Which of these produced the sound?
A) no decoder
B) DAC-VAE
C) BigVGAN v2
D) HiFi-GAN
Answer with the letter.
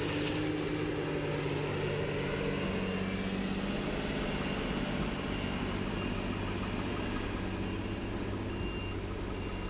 A